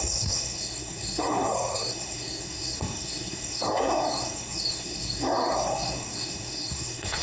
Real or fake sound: fake